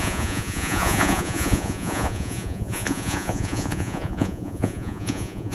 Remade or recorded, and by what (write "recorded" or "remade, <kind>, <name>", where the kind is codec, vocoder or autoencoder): remade, vocoder, Vocos